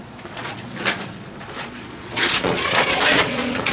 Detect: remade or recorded remade